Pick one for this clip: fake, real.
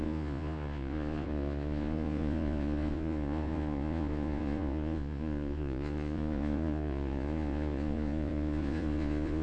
fake